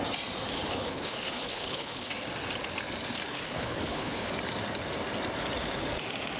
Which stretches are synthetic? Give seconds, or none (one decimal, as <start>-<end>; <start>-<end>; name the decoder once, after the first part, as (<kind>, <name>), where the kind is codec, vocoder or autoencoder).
0.7-2.1 (codec, HILCodec); 3.3-4.3

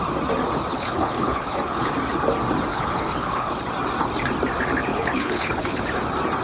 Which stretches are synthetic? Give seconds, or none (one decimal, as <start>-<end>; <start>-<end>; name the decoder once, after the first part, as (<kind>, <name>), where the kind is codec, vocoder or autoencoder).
0.7-1.9 (codec, HILCodec); 2.7-3.6; 4.9-5.8

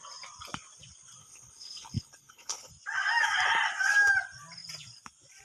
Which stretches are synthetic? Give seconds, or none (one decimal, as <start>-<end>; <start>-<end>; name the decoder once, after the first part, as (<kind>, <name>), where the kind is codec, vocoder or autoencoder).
1.2-2.7 (codec, HILCodec)

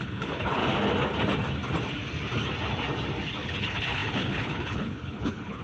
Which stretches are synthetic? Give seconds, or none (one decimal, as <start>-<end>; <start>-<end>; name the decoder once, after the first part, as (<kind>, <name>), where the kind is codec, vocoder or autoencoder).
0.0-0.6 (codec, HILCodec); 3.4-5.6

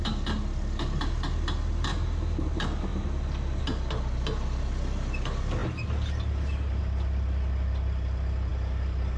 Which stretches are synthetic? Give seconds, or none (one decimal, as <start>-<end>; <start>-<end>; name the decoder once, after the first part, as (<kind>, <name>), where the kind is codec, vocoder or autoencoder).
none

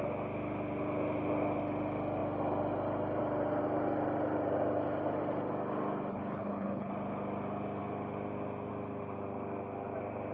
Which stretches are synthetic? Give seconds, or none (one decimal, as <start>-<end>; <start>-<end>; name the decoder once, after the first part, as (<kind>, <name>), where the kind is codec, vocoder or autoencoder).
6.1-6.9 (codec, HILCodec)

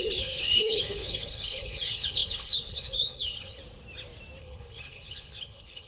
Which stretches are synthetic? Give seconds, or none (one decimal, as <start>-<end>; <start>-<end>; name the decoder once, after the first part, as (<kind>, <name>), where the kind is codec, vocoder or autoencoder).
0.0-3.6 (codec, HILCodec); 4.4-5.9

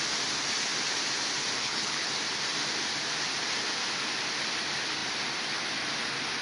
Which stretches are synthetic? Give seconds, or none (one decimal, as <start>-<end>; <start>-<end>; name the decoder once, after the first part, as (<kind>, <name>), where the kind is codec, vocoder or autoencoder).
1.6-2.1 (codec, HILCodec)